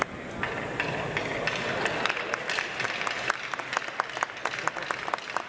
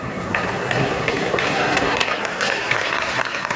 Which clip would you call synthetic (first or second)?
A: second